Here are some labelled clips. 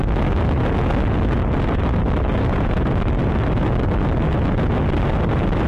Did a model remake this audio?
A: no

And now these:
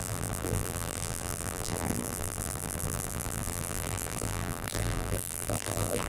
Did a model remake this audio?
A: yes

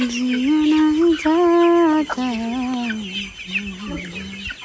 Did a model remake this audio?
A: no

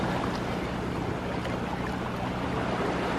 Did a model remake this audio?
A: no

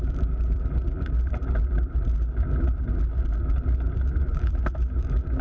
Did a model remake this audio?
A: yes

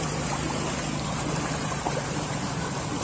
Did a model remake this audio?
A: yes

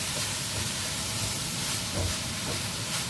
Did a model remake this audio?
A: yes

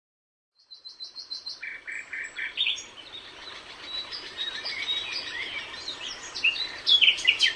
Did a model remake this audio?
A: yes